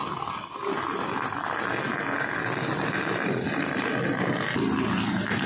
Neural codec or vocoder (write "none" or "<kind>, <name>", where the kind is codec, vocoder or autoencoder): none